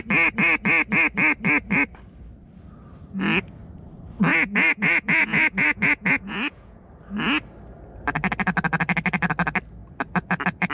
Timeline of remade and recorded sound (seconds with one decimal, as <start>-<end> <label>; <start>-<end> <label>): 0.0-4.3 recorded; 4.3-6.9 remade; 6.9-10.7 recorded